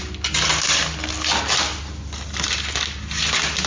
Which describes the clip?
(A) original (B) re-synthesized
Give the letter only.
A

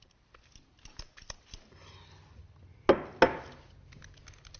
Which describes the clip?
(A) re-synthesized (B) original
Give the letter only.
B